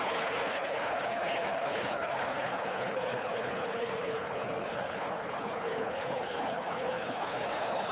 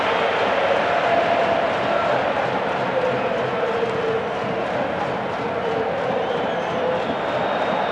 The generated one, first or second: first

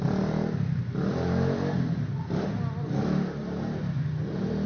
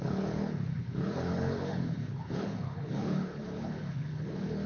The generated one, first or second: second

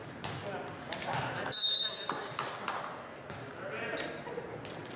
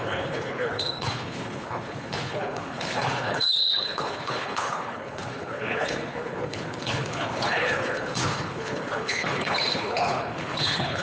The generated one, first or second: second